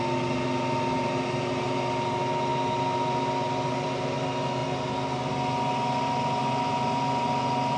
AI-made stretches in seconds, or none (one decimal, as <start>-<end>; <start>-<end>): none